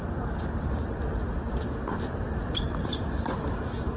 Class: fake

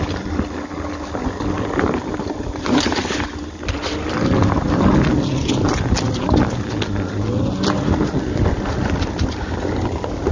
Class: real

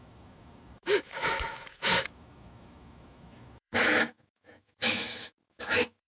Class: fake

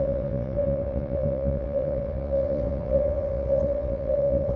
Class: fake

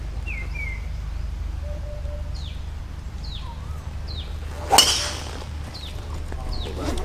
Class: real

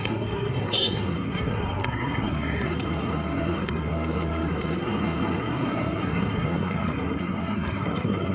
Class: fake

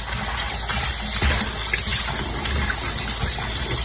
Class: real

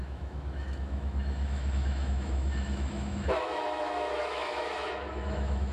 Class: fake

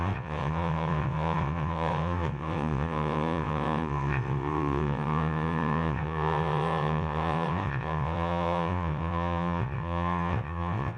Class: fake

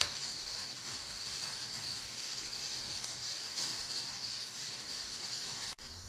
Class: fake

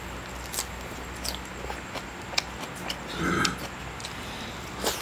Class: real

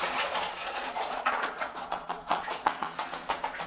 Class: fake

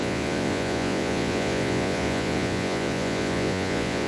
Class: fake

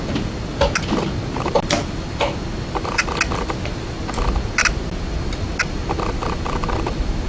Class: real